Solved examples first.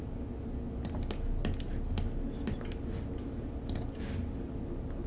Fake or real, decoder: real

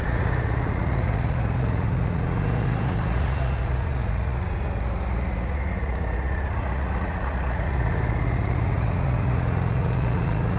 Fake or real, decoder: fake, vocoder, Vocos